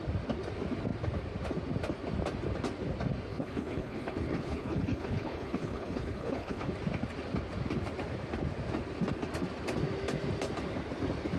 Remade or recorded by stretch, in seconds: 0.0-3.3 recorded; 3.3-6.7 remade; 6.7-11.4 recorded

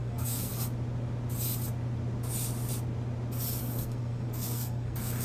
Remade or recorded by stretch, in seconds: 0.0-0.5 remade; 0.5-3.6 recorded; 3.6-5.2 remade

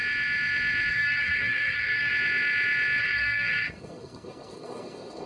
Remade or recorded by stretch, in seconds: 0.0-0.9 recorded; 0.9-2.1 remade; 2.1-3.0 recorded; 3.0-5.3 remade

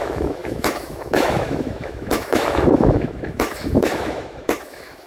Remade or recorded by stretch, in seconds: 0.0-5.1 remade